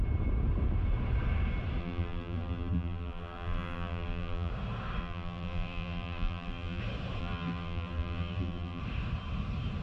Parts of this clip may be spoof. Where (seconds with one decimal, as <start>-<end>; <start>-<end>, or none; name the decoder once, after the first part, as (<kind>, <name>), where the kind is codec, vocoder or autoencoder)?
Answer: 1.8-4.5 (vocoder, BigVGAN v2); 5.0-6.8; 7.2-8.8